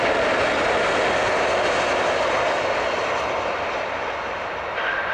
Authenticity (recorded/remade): recorded